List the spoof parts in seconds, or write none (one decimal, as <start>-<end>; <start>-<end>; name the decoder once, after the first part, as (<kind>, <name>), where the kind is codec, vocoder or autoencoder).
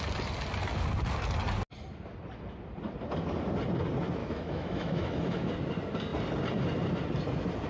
4.2-5.5 (autoencoder, DAC-VAE)